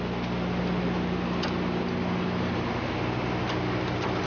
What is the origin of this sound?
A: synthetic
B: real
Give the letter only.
B